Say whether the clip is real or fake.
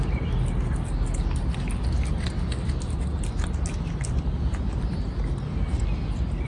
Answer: real